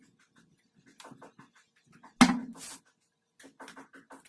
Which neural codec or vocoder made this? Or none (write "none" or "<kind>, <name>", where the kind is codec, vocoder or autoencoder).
none